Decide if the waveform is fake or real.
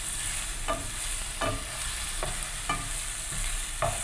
real